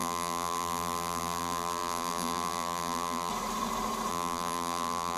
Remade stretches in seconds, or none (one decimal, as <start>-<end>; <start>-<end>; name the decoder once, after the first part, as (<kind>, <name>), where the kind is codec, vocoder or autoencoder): 0.0-3.3 (vocoder, BigVGAN v2); 4.1-5.2